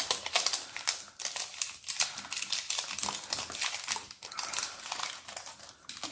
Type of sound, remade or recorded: recorded